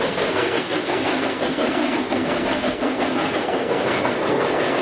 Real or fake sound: fake